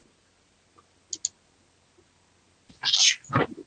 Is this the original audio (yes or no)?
yes